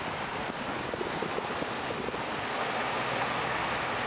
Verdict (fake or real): real